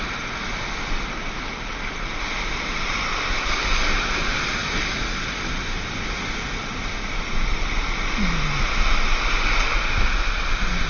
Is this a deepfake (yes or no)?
no